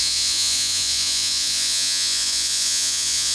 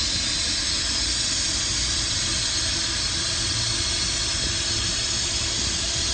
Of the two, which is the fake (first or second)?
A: first